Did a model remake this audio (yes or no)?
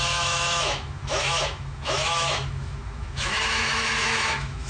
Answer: yes